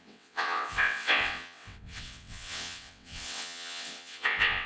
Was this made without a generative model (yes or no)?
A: no